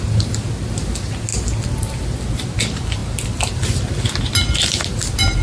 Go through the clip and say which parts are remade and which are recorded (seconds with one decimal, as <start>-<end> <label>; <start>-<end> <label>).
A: 0.0-5.4 recorded